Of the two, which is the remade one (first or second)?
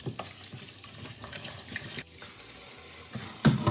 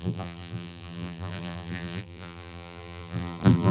second